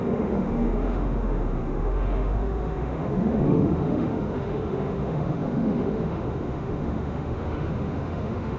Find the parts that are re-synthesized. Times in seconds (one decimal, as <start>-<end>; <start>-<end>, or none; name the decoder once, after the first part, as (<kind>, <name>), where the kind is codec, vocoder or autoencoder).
0.0-8.6 (autoencoder, DAC-VAE)